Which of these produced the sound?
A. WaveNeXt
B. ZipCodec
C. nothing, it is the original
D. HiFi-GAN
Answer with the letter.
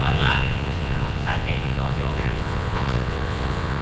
A